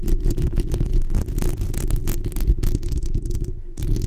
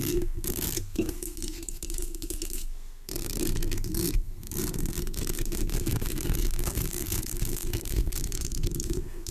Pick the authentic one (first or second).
first